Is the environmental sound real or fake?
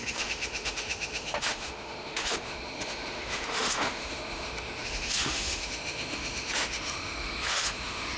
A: fake